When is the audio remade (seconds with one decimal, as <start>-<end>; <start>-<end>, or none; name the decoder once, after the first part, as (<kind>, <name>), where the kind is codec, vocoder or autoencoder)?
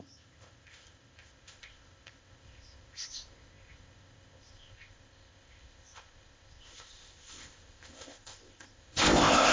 0.0-9.5 (codec, ZipCodec)